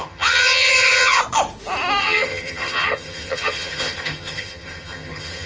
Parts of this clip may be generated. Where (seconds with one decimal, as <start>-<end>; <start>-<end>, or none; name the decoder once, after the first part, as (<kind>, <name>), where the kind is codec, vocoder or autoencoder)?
0.0-1.2 (vocoder, HiFi-GAN); 2.0-5.5